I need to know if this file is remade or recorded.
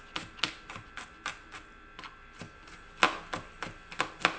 recorded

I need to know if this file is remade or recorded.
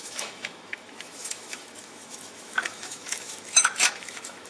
remade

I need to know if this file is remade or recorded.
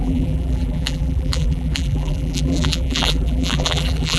remade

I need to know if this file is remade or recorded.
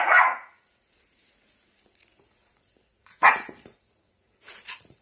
remade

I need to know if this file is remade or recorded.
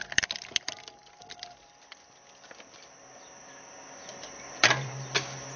remade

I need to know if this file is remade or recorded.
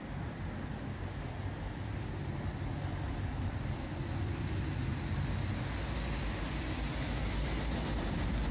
recorded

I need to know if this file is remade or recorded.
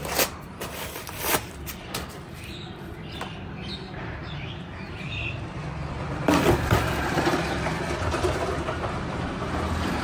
remade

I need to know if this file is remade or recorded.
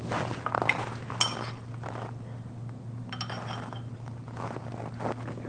recorded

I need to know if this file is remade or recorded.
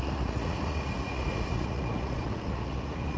remade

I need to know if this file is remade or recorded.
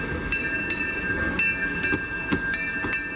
recorded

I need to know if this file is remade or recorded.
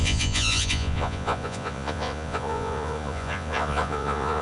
remade